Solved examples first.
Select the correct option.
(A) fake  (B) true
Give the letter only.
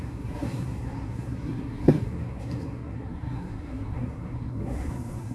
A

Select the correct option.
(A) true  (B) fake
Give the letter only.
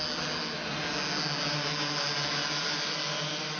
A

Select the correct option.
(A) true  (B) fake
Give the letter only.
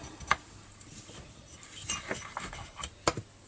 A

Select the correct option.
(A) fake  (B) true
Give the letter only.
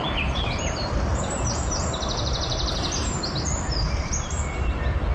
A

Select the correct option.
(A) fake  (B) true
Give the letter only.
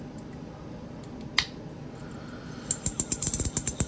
B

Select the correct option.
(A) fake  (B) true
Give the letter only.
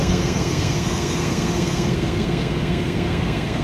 A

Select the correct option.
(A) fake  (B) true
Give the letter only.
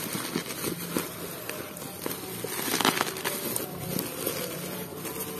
B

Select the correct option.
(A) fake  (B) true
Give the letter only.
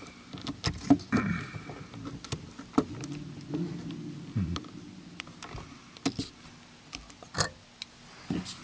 B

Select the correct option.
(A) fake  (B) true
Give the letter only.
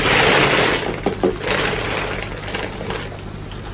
B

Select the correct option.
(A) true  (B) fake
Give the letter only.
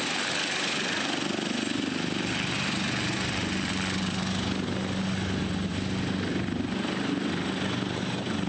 A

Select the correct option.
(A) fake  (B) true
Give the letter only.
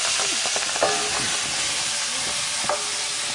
B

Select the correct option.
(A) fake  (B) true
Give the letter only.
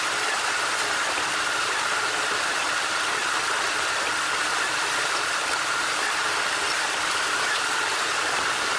B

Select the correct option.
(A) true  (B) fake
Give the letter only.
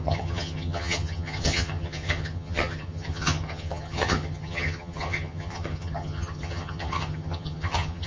B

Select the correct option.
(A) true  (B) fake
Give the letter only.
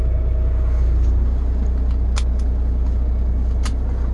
A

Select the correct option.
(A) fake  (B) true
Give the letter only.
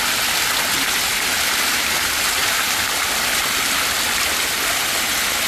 B